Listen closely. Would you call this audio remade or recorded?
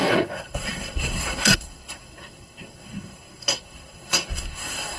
remade